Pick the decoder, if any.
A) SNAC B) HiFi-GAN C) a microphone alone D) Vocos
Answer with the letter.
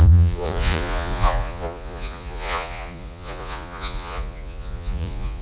D